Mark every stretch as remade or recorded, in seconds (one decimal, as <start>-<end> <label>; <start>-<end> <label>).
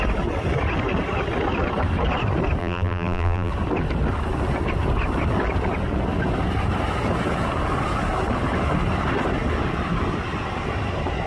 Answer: 0.0-2.6 recorded; 2.6-3.5 remade; 3.5-11.3 recorded